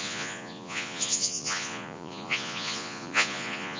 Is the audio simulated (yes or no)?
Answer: yes